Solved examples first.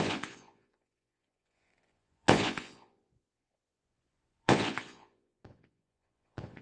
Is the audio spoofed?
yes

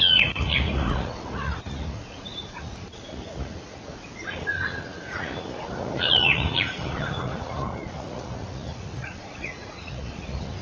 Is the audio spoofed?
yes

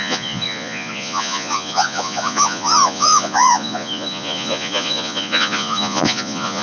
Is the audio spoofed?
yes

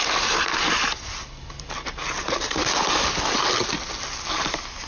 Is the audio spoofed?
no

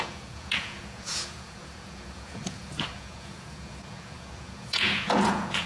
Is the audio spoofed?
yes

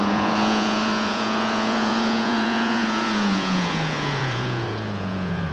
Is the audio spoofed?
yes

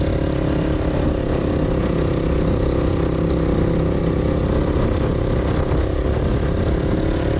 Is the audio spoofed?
no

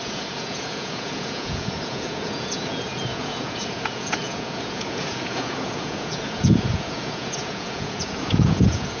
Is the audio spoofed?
yes